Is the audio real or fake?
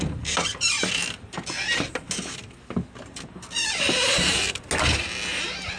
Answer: real